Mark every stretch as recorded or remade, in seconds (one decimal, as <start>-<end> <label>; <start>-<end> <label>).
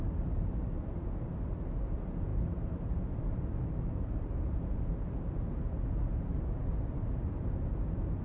0.0-8.2 recorded